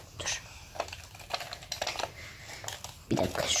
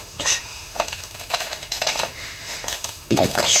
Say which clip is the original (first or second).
first